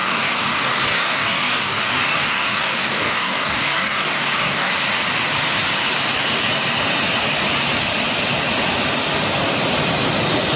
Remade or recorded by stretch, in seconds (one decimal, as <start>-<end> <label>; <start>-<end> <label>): 0.0-4.7 remade; 4.7-10.6 recorded